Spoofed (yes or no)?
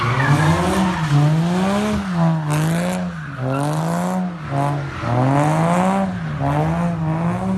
no